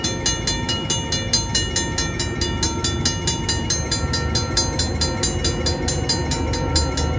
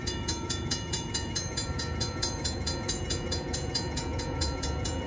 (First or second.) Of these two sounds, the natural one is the first